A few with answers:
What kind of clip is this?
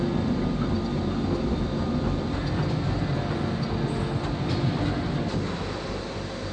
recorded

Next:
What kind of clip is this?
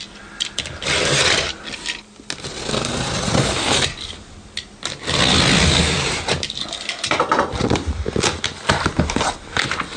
recorded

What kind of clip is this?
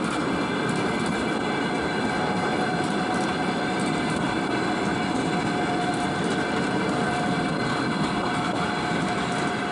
recorded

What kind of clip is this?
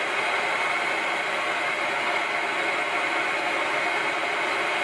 recorded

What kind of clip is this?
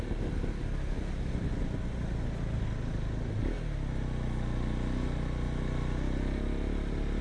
recorded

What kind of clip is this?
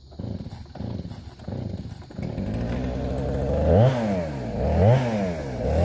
recorded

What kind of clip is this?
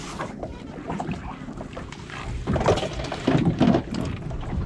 recorded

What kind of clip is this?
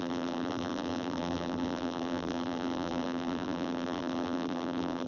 remade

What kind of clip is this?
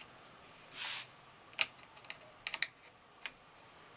recorded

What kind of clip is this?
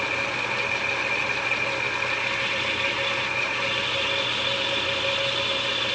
recorded